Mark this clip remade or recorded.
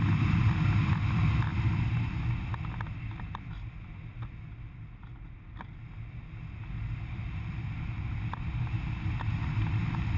recorded